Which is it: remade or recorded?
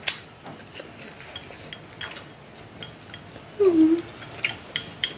recorded